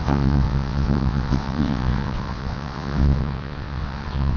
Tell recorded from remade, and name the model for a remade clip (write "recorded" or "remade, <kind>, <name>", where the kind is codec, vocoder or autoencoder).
remade, vocoder, WaveNeXt